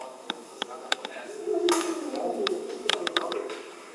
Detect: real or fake fake